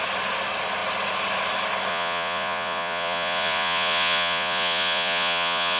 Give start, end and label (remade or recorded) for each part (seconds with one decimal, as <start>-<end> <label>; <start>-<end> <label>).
0.0-1.9 recorded; 1.9-5.8 remade